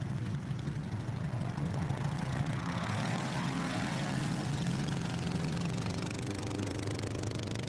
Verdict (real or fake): fake